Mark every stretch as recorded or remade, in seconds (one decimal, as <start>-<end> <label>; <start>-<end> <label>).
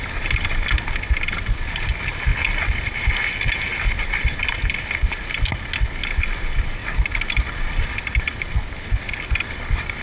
0.0-6.8 recorded; 6.8-8.6 remade; 8.6-10.0 recorded